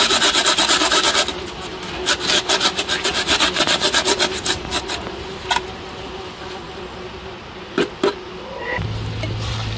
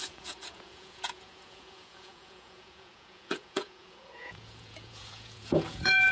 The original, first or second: first